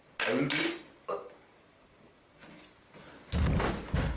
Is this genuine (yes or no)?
yes